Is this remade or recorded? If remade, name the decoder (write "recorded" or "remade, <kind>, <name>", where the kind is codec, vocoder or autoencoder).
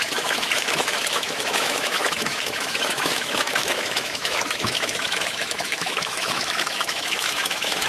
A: remade, autoencoder, DAC-VAE